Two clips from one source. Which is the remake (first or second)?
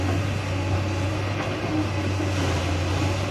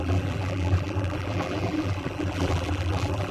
second